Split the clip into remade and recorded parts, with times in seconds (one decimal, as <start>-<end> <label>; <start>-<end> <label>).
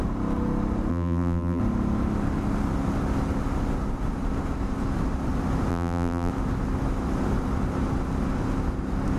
0.0-0.9 recorded; 0.9-1.6 remade; 1.6-5.7 recorded; 5.7-6.3 remade; 6.3-9.2 recorded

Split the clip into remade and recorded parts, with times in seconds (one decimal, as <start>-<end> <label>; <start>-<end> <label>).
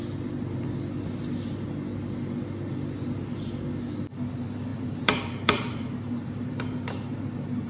0.0-4.7 recorded; 4.7-7.7 remade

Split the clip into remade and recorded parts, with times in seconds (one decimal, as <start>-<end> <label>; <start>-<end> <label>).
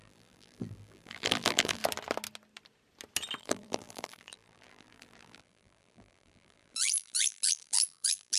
0.0-1.8 remade; 1.8-3.4 recorded; 3.4-8.4 remade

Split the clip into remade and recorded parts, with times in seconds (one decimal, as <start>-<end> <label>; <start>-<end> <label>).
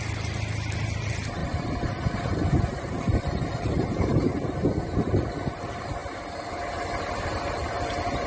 0.0-1.4 recorded; 1.4-4.8 remade; 4.8-8.3 recorded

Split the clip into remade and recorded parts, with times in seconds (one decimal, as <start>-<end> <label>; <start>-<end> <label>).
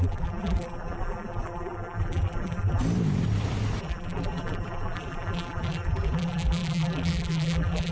0.0-2.8 remade; 2.8-3.8 recorded; 3.8-7.9 remade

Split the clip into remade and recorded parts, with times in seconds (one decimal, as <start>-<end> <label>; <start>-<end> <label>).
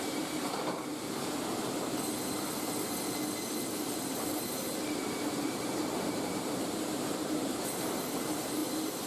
0.0-0.9 remade; 0.9-4.1 recorded; 4.1-9.1 remade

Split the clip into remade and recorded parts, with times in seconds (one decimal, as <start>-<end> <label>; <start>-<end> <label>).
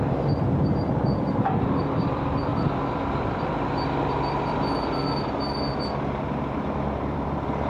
0.0-2.5 remade; 2.5-6.2 recorded; 6.2-7.7 remade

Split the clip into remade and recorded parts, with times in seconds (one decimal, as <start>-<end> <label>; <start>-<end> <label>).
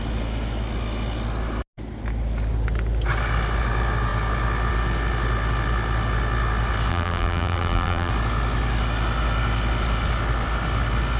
0.0-6.9 recorded; 6.9-8.1 remade; 8.1-11.2 recorded